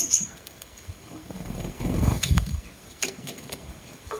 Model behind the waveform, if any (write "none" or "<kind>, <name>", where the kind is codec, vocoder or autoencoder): codec, SNAC